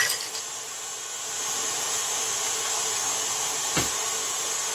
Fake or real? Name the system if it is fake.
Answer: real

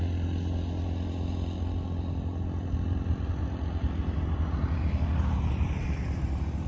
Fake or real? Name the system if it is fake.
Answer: real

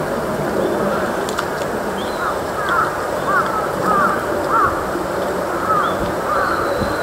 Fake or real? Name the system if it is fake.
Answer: real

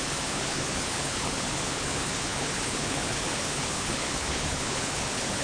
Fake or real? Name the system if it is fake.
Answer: fake, codec, HILCodec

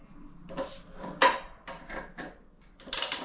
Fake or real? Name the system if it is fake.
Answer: real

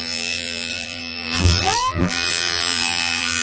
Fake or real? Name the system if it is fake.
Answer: fake, vocoder, BigVGAN v2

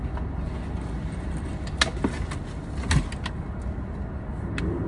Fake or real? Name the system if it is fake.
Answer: real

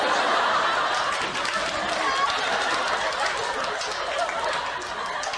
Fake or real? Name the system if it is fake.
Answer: real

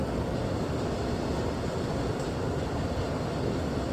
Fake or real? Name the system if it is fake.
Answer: real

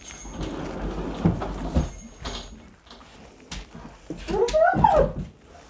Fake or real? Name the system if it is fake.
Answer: real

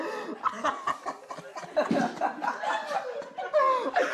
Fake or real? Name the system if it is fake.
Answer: real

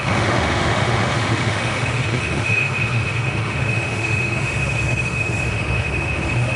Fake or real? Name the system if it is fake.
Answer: fake, autoencoder, DAC-VAE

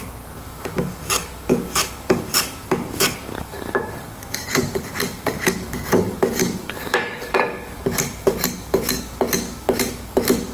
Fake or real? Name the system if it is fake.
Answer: fake, codec, DAC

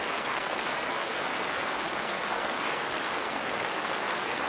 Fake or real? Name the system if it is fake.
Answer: fake, codec, SNAC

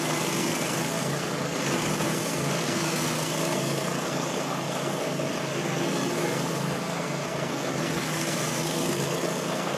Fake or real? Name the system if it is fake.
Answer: fake, codec, SNAC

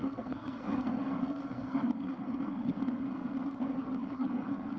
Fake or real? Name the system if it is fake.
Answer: fake, codec, SNAC